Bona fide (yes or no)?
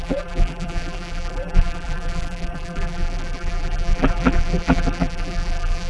no